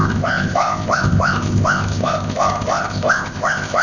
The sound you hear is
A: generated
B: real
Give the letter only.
A